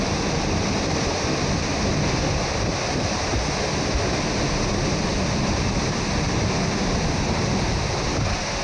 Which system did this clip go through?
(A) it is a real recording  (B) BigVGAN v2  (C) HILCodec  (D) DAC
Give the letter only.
A